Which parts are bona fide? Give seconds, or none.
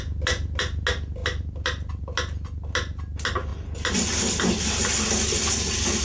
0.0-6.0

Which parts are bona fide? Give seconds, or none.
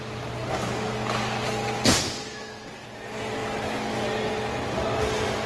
0.0-5.5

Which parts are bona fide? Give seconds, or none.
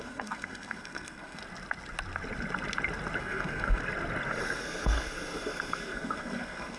1.4-3.2; 3.8-4.4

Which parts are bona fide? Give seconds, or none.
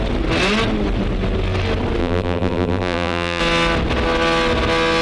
0.0-2.0; 3.4-5.0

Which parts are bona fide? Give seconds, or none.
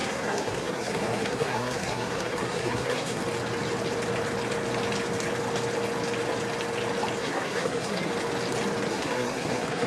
3.2-7.2; 8.1-8.9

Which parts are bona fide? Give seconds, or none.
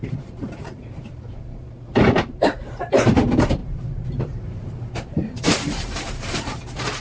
3.1-3.6; 6.6-7.0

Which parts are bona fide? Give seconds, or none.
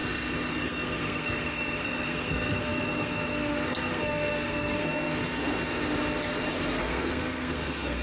0.0-0.5; 5.1-6.8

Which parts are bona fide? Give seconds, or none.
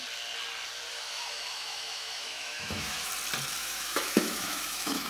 0.0-0.9; 3.1-3.6